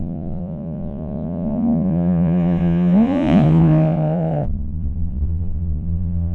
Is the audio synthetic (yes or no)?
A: yes